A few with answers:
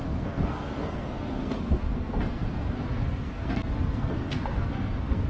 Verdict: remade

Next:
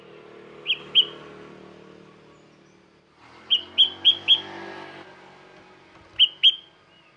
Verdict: recorded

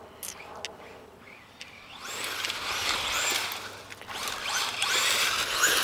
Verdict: recorded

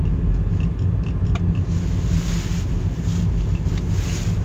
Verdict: recorded